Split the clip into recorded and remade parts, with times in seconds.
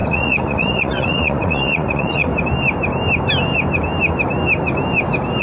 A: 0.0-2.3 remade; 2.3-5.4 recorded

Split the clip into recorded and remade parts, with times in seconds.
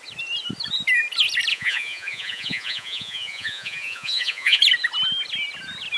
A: 0.0-1.5 recorded; 1.5-4.6 remade; 4.6-6.0 recorded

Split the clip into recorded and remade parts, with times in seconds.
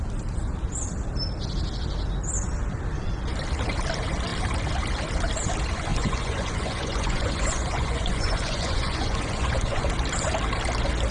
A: 0.0-5.9 recorded; 5.9-9.9 remade; 9.9-11.1 recorded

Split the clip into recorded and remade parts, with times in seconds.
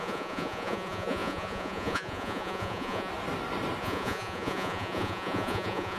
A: 0.0-3.1 remade; 3.1-3.8 recorded; 3.8-6.0 remade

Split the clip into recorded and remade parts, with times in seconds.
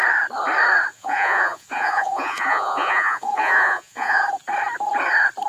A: 0.0-0.9 recorded; 0.9-4.2 remade; 4.2-5.5 recorded